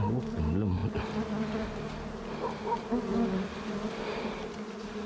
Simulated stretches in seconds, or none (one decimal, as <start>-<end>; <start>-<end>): none